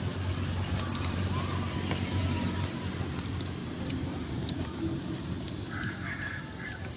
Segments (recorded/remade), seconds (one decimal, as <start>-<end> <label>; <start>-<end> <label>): 0.0-3.6 recorded; 3.6-4.5 remade; 4.5-7.0 recorded